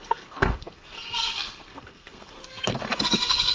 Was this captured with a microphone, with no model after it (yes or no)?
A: no